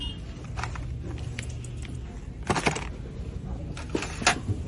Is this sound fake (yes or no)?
no